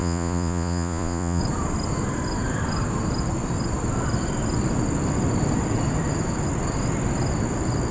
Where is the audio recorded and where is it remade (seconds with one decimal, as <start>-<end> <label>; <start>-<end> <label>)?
0.0-1.4 remade; 1.4-7.9 recorded